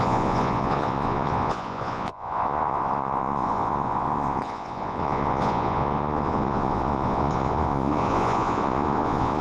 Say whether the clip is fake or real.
fake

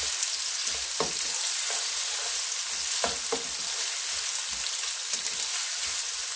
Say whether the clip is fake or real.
real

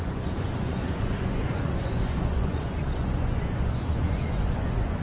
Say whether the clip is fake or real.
fake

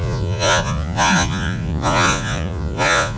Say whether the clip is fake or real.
fake